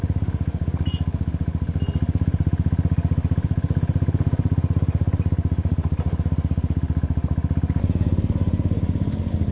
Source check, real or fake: real